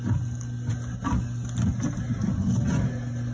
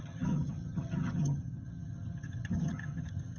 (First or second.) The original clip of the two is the first